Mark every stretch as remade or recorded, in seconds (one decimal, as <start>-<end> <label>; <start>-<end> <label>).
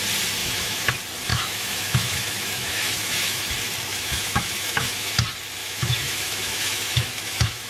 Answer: 0.0-0.4 recorded; 0.4-0.9 remade; 0.9-1.3 recorded; 1.3-3.5 remade; 3.5-3.9 recorded; 3.9-5.1 remade; 5.1-5.6 recorded; 5.6-7.7 remade